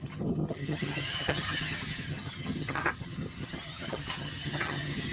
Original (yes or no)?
no